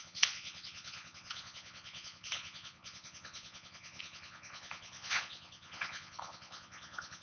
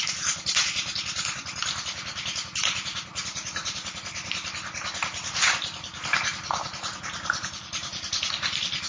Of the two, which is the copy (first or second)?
first